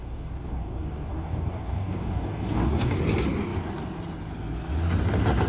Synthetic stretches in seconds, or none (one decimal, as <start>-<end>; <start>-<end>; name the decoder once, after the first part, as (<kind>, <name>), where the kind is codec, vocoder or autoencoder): 0.0-3.0 (codec, DAC)